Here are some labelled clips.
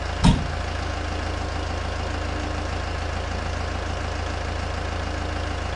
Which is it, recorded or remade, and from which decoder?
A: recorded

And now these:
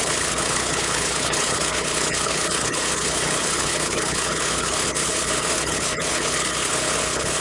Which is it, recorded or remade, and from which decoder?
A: remade, codec, HILCodec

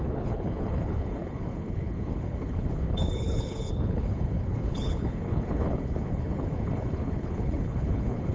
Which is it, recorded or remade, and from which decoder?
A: remade, codec, HILCodec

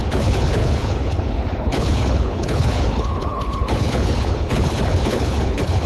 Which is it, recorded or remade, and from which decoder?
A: remade, codec, HILCodec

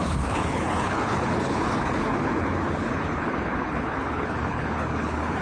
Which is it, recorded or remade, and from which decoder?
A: remade, codec, HILCodec